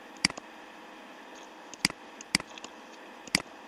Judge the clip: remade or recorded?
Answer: recorded